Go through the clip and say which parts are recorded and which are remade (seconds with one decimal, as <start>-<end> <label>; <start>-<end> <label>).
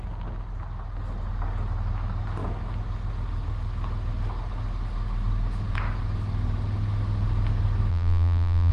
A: 0.0-7.9 recorded; 7.9-8.7 remade